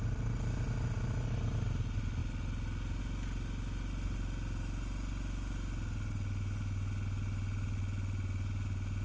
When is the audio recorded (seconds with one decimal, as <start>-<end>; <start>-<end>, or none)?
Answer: 0.0-9.0